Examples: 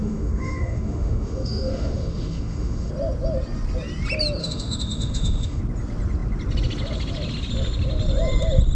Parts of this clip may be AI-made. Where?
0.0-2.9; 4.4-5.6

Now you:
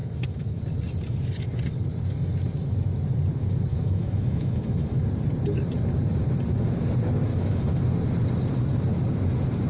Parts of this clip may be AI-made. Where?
0.0-0.6; 3.7-5.0; 7.3-7.8

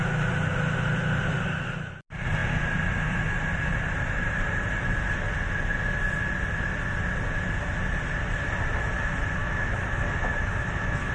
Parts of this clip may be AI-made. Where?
9.4-11.1